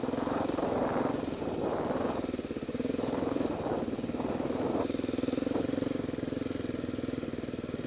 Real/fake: real